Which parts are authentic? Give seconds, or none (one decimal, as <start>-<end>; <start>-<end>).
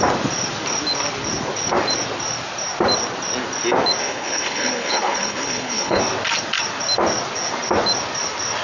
0.0-4.0; 6.0-8.6